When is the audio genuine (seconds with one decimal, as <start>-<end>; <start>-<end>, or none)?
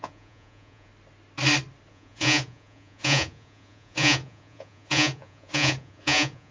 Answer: 0.9-1.9